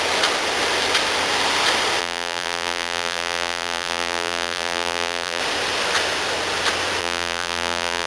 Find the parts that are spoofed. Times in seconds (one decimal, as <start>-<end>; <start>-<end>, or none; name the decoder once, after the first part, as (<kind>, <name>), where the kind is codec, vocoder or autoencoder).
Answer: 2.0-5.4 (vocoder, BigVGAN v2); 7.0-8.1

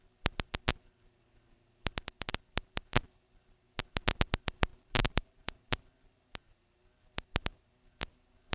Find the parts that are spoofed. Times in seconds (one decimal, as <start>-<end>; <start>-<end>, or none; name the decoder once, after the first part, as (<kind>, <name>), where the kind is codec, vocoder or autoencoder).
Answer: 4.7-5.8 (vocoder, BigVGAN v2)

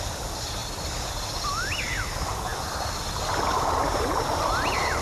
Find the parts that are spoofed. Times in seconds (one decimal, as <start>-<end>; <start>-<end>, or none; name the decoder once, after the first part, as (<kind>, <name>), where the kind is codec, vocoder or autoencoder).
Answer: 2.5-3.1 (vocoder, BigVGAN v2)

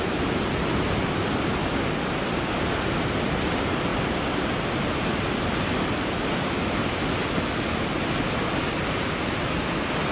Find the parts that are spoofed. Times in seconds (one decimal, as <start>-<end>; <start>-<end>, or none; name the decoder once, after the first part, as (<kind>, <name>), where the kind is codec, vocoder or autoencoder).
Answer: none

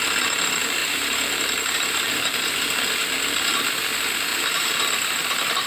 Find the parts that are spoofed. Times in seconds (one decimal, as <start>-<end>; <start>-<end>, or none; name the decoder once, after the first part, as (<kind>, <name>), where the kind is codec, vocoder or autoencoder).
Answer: 0.8-3.2 (vocoder, BigVGAN v2); 4.3-4.8